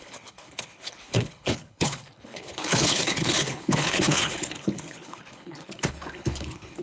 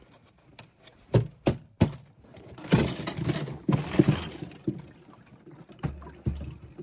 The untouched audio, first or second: second